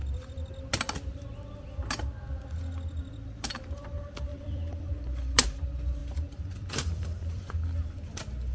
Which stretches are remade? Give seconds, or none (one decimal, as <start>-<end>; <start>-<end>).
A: 4.3-4.9; 6.0-7.4